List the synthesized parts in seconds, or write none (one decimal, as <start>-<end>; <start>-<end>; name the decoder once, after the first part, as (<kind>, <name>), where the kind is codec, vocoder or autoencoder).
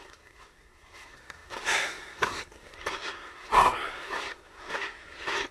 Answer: 0.0-5.5 (codec, SNAC)